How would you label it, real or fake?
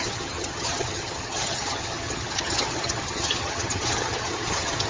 fake